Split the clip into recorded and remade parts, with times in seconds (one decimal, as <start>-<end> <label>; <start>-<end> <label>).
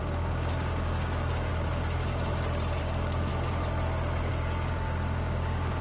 0.0-1.5 remade; 1.5-2.8 recorded; 2.8-3.3 remade; 3.3-4.3 recorded; 4.3-5.8 remade